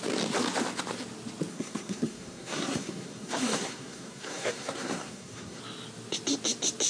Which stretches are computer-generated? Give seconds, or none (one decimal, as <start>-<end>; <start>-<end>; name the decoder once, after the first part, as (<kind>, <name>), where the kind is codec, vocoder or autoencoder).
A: 1.5-5.6 (codec, SNAC)